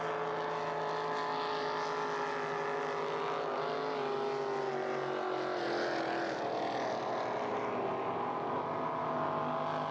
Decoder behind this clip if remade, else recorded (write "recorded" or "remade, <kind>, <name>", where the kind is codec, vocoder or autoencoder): recorded